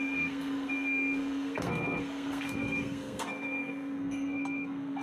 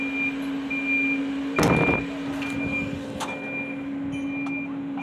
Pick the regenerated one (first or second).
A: first